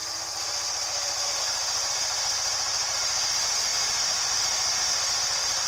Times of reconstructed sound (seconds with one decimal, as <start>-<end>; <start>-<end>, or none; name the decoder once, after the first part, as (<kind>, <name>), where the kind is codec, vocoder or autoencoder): none